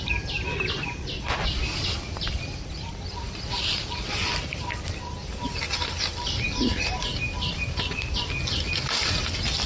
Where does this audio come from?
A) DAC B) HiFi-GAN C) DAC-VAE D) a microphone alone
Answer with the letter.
D